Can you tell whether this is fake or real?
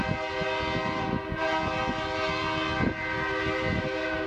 real